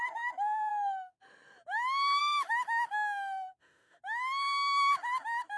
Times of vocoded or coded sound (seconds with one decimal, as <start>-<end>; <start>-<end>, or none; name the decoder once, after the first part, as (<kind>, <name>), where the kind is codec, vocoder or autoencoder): 0.7-1.2 (autoencoder, DAC-VAE); 2.2-4.0

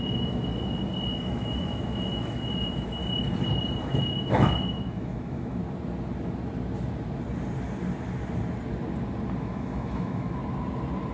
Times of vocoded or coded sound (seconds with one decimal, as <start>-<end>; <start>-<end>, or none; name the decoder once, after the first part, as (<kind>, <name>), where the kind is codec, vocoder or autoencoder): 0.0-0.5 (autoencoder, DAC-VAE); 1.3-3.0; 3.8-5.6; 9.4-10.4

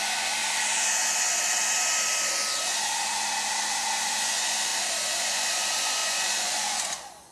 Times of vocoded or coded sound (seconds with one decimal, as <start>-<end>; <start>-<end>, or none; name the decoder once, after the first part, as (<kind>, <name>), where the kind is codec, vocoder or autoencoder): 0.0-0.4 (vocoder, Vocos); 3.9-4.7; 5.2-7.3

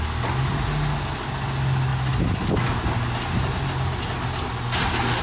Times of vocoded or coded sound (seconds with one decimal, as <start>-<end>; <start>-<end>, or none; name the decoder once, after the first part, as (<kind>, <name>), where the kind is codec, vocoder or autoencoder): none

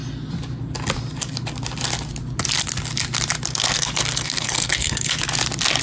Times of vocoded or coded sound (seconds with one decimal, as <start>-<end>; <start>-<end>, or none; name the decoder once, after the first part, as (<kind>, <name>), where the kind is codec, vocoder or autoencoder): 3.5-5.2 (codec, SNAC)

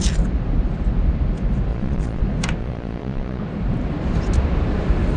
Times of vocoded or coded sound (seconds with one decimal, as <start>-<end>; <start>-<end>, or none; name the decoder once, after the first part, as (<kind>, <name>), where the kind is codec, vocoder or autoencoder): 1.7-2.2 (vocoder, Vocos); 2.6-3.4